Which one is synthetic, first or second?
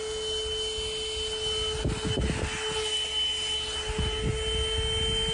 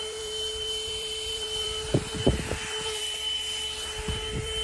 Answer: second